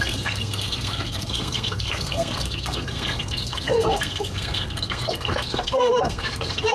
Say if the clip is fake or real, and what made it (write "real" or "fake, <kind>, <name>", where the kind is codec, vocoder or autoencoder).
fake, codec, SNAC